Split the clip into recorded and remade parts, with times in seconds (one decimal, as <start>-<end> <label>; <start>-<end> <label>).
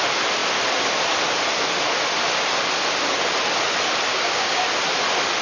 0.0-4.1 recorded; 4.1-4.6 remade; 4.6-5.4 recorded